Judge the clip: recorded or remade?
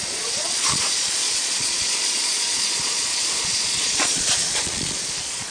remade